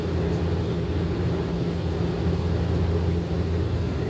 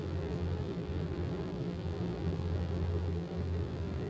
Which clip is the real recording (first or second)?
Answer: first